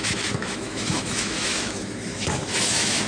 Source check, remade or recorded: remade